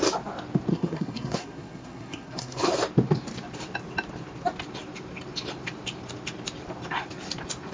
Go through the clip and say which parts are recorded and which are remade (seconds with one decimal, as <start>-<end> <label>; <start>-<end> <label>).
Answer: 0.0-0.7 recorded; 0.7-2.7 remade; 2.7-7.7 recorded